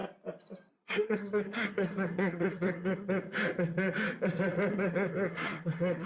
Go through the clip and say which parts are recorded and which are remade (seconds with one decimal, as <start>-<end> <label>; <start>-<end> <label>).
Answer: 0.0-0.7 recorded; 0.7-3.2 remade; 3.2-4.7 recorded; 4.7-6.1 remade